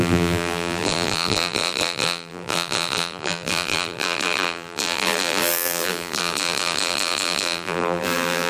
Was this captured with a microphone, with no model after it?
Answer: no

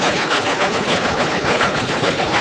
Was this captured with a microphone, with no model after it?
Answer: no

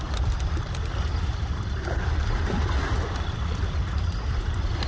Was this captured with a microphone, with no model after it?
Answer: yes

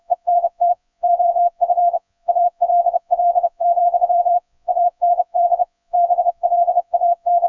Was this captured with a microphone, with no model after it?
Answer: no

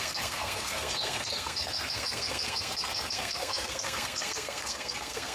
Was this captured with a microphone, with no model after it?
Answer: no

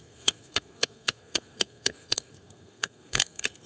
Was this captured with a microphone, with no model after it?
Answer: no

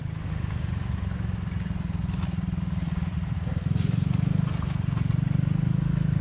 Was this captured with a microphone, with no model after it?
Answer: yes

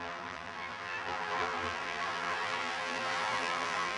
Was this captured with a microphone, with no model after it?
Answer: no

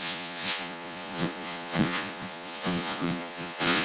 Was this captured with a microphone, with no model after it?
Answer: no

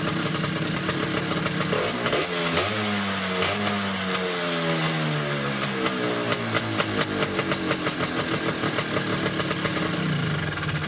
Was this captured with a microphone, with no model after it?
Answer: yes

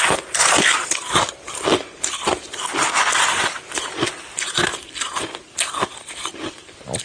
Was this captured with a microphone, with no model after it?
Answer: no